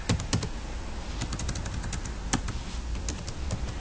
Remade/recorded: recorded